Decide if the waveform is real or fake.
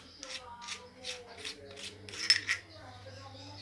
real